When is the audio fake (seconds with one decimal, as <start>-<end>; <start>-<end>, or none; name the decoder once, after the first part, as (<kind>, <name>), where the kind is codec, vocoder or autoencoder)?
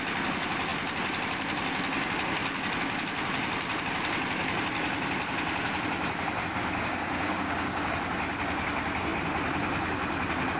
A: 6.6-7.9 (codec, DAC)